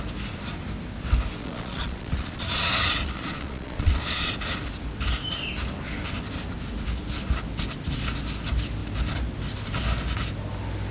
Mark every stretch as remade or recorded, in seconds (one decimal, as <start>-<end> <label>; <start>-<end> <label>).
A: 0.0-1.4 recorded; 1.4-4.3 remade; 4.3-10.9 recorded